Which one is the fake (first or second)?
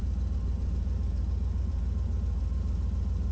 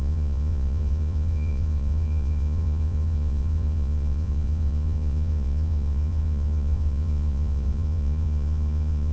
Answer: second